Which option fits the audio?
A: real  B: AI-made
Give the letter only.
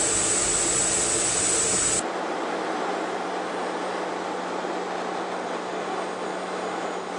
A